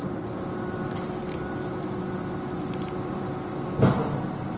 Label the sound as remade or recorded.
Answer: recorded